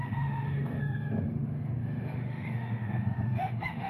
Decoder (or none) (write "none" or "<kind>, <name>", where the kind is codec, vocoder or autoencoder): autoencoder, DAC-VAE